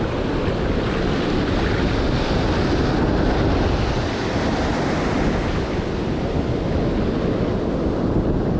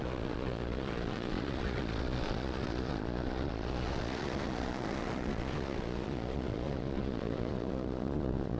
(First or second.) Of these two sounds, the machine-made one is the second